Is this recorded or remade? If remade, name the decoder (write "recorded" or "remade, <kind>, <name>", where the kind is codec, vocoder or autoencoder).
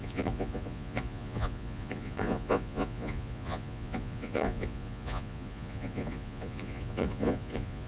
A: remade, vocoder, Vocos